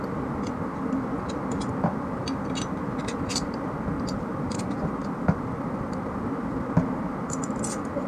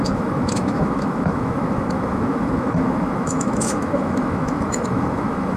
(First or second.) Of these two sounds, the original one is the first